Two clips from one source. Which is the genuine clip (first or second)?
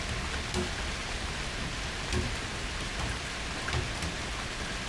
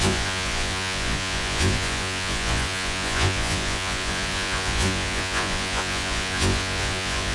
first